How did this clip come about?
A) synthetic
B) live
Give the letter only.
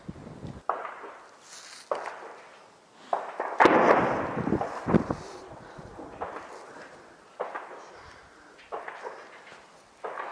B